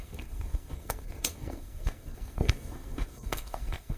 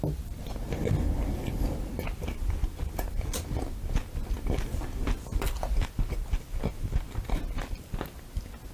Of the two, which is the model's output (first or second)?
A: first